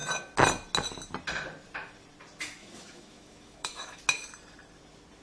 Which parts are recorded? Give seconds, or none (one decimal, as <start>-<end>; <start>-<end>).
0.0-2.6; 4.0-5.2